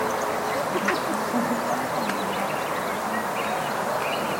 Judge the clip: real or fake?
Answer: real